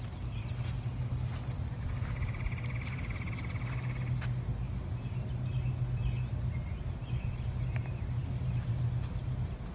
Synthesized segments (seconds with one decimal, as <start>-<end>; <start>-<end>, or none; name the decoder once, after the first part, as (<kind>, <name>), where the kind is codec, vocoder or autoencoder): none

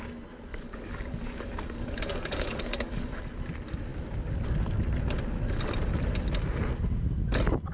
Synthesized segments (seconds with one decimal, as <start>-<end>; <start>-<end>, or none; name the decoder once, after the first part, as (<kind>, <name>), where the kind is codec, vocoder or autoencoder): 0.5-3.2 (codec, DAC)

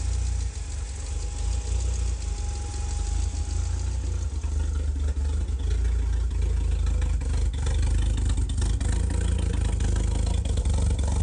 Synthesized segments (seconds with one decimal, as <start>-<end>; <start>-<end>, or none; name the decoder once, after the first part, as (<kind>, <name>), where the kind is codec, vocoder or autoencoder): none

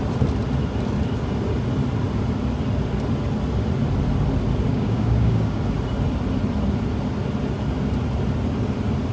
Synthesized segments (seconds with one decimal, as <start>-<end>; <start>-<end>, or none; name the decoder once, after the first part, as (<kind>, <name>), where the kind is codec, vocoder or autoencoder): 4.7-5.6 (codec, DAC)